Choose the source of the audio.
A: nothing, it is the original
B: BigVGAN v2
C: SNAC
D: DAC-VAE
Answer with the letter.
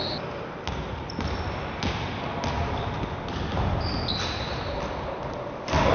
A